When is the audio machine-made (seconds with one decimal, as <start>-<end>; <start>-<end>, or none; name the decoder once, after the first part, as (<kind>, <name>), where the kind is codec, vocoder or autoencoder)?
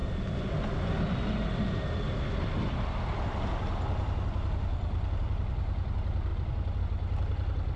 none